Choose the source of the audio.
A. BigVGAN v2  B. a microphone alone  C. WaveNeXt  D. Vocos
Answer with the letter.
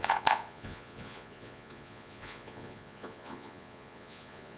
D